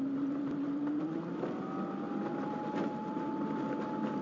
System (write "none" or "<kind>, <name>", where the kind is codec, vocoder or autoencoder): none